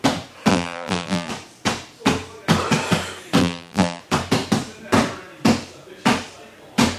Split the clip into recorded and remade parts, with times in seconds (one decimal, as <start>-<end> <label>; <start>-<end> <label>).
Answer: 0.0-0.5 recorded; 0.5-1.3 remade; 1.3-3.4 recorded; 3.4-4.0 remade; 4.0-7.0 recorded